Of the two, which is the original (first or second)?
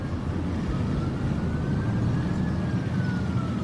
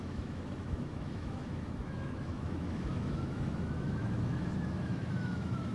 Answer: first